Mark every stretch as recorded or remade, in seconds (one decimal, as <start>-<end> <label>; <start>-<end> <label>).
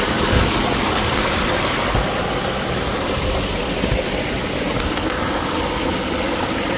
0.0-6.8 recorded